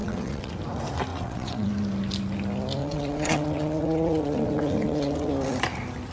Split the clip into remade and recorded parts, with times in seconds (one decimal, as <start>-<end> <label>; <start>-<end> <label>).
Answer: 0.0-0.5 remade; 0.5-1.1 recorded; 1.1-1.7 remade; 1.7-2.8 recorded; 2.8-5.3 remade; 5.3-6.1 recorded